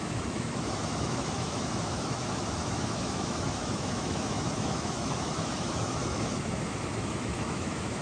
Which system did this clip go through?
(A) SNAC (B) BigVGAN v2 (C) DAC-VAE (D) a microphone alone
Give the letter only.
C